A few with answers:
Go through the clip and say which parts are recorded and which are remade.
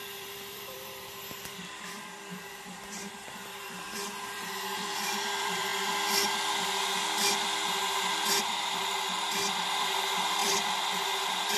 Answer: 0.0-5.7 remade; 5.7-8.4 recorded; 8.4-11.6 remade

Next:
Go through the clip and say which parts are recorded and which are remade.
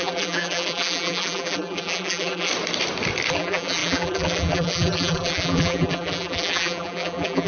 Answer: 0.0-2.5 remade; 2.5-3.3 recorded; 3.3-7.5 remade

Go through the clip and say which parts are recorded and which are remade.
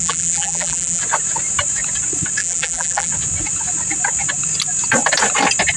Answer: 0.0-1.0 remade; 1.0-2.4 recorded; 2.4-3.1 remade; 3.1-5.8 recorded